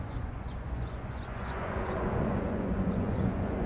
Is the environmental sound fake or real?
fake